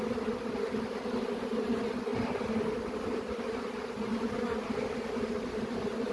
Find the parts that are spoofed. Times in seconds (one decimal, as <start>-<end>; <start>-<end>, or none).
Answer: none